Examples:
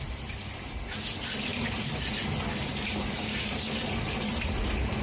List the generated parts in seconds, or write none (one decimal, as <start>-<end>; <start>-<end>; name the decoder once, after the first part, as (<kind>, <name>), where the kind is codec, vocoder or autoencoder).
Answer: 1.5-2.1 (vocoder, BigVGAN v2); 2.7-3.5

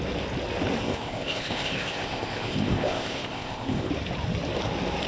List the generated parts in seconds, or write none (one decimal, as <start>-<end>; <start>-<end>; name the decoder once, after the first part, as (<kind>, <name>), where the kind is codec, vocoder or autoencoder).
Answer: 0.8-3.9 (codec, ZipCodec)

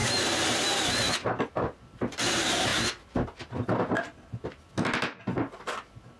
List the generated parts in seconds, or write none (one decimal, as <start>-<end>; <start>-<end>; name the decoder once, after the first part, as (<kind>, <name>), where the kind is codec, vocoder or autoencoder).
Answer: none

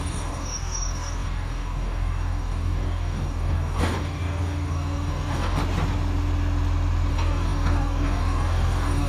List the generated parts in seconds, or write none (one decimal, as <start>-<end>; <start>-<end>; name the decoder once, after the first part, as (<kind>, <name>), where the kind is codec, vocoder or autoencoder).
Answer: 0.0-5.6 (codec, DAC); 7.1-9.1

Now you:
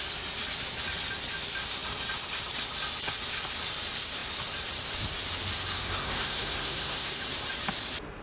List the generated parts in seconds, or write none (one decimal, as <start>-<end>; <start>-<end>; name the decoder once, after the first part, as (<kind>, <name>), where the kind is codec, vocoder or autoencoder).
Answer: 5.8-7.2 (codec, SNAC)

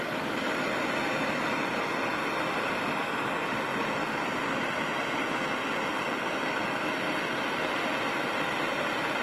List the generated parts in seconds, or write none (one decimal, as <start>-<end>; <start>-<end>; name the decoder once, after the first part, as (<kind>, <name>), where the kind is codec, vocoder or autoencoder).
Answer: none